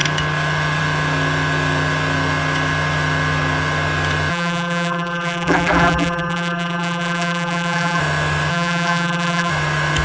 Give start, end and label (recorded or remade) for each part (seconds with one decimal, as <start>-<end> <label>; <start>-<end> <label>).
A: 0.0-4.3 recorded; 4.3-8.0 remade; 8.0-8.5 recorded; 8.5-9.5 remade; 9.5-10.0 recorded

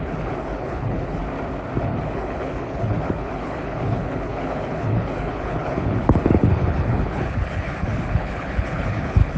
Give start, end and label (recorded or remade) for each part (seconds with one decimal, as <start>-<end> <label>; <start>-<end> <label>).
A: 0.0-1.2 remade; 1.2-1.8 recorded; 1.8-9.4 remade

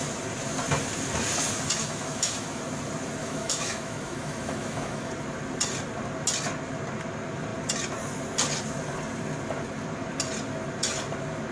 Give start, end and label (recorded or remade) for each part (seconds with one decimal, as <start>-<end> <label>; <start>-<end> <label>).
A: 0.0-1.8 recorded; 1.8-2.6 remade; 2.6-3.2 recorded; 3.2-5.1 remade; 5.1-11.5 recorded

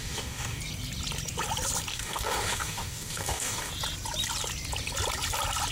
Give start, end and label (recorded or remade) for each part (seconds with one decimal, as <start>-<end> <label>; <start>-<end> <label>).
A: 0.0-0.6 remade; 0.6-1.9 recorded; 1.9-3.7 remade; 3.7-5.7 recorded

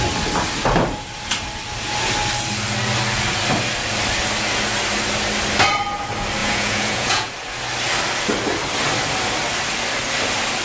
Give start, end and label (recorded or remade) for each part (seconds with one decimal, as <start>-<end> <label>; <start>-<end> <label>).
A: 0.0-6.4 recorded; 6.4-7.3 remade; 7.3-10.6 recorded

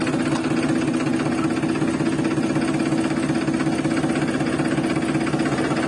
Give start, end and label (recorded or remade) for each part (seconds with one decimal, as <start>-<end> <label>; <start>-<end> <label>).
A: 0.0-5.9 recorded